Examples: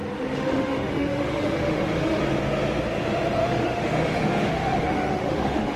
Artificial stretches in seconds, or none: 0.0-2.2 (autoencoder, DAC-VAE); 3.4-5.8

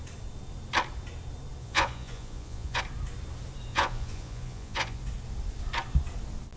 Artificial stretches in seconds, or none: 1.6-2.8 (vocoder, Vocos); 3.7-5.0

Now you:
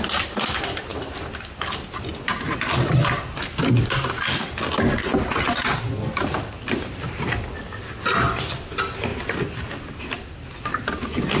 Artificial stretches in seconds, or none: none